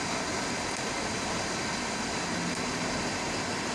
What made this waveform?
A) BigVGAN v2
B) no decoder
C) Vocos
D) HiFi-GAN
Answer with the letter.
B